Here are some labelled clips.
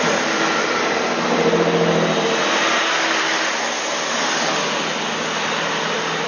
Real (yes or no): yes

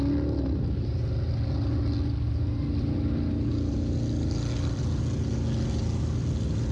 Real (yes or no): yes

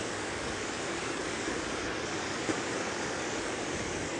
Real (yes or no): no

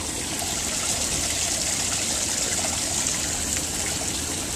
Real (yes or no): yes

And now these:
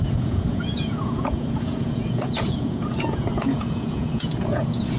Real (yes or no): no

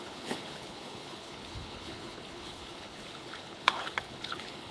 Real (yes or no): no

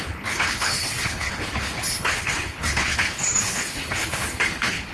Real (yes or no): no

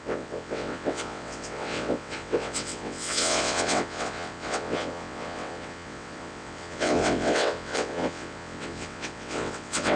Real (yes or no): no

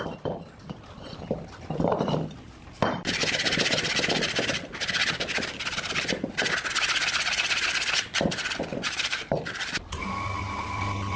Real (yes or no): yes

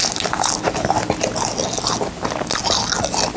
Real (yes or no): yes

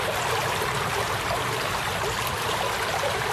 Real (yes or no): yes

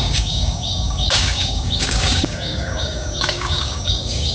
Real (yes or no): no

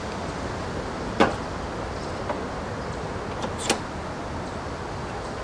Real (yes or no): yes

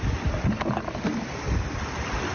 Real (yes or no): yes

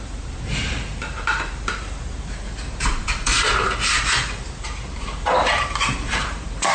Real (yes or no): no